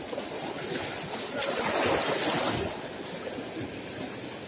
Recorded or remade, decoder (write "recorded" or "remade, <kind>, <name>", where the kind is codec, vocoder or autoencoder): recorded